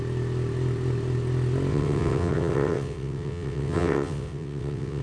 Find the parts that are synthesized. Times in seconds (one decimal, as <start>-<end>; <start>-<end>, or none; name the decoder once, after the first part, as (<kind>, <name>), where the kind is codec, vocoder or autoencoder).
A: 1.7-5.0 (vocoder, WaveNeXt)